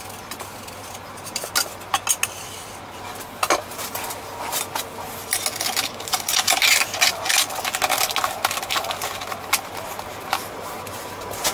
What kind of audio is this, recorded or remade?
recorded